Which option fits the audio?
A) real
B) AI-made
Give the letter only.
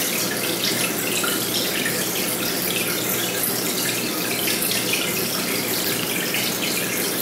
A